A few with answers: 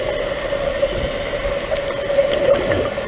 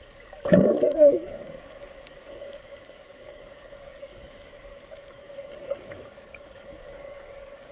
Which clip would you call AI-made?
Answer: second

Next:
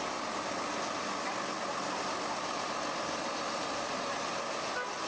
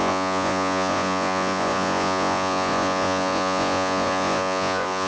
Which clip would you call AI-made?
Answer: second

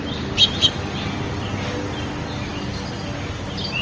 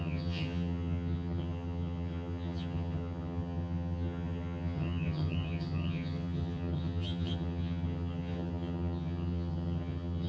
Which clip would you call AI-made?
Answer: second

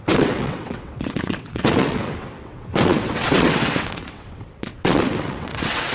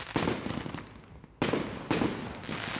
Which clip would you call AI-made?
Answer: first